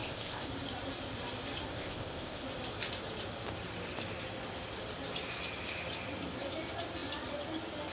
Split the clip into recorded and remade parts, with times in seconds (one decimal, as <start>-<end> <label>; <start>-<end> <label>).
0.0-0.5 remade; 0.5-1.7 recorded; 1.7-2.4 remade; 2.4-7.9 recorded